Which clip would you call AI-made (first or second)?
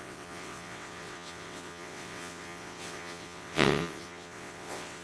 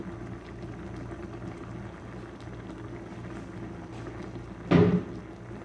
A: first